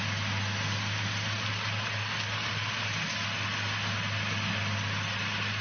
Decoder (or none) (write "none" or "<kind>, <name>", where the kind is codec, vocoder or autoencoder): none